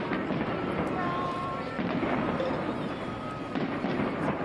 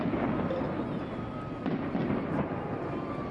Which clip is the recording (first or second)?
second